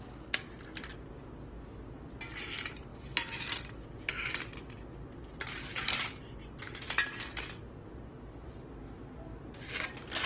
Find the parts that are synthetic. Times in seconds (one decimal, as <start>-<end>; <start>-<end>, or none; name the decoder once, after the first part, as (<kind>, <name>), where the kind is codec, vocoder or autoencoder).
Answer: none